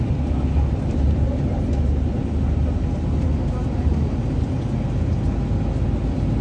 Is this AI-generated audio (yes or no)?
no